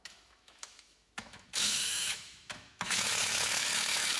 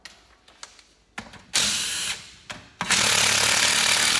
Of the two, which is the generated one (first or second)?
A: first